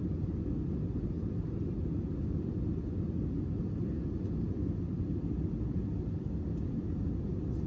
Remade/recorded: recorded